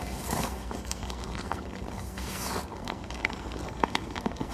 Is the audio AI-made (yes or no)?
yes